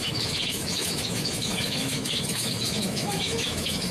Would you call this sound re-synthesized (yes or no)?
yes